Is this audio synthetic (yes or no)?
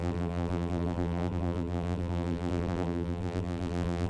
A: yes